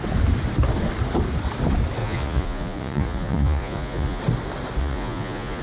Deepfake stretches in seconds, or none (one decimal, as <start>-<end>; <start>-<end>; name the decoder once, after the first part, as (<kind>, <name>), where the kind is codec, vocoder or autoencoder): 2.0-4.2 (vocoder, Vocos); 4.8-5.6